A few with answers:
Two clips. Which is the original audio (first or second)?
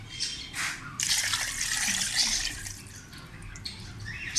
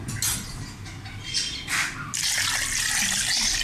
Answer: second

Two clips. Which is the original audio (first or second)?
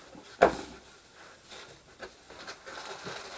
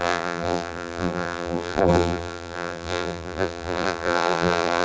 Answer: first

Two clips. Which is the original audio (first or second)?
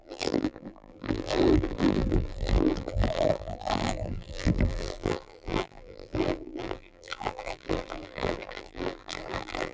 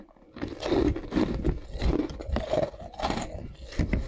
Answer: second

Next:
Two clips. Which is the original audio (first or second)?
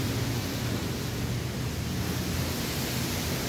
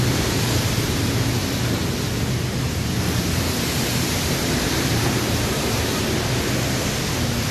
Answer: first